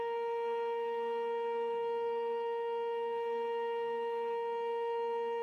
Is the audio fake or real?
fake